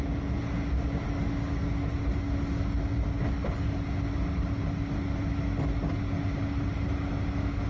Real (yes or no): yes